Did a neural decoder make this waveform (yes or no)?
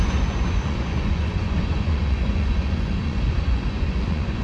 yes